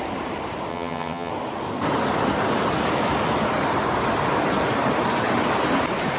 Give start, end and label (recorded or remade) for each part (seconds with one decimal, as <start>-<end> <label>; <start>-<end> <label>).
0.0-0.7 recorded; 0.7-1.3 remade; 1.3-6.2 recorded